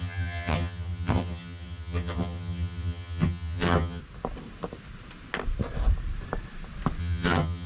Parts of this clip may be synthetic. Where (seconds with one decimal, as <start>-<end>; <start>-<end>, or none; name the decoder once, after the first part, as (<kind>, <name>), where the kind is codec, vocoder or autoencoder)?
0.0-4.0 (vocoder, HiFi-GAN); 7.0-7.7